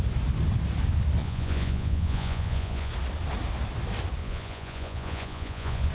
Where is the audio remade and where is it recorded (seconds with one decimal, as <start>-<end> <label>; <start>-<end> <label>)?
0.0-1.2 recorded; 1.2-2.9 remade; 2.9-4.2 recorded; 4.2-5.9 remade